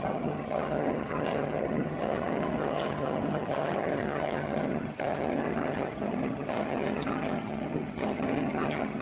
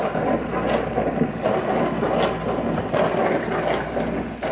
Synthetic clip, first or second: first